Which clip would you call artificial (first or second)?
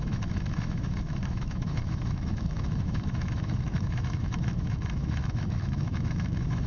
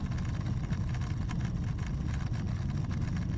first